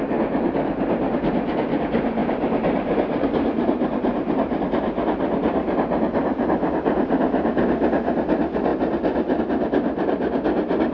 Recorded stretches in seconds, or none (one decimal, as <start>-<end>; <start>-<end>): 0.0-2.2; 4.6-10.9